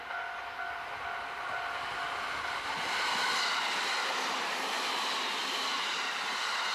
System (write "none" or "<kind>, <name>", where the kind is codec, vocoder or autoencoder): none